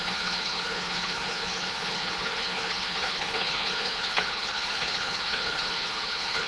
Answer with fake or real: fake